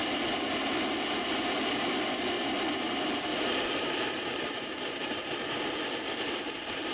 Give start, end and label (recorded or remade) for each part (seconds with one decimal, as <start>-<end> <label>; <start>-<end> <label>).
0.0-3.3 recorded; 3.3-5.2 remade; 5.2-6.9 recorded